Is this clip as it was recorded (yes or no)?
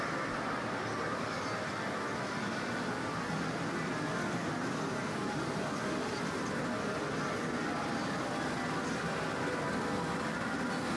yes